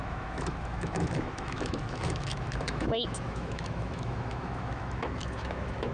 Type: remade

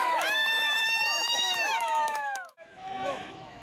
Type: remade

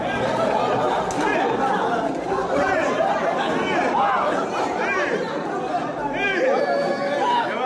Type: recorded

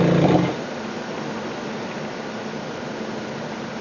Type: recorded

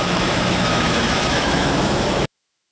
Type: remade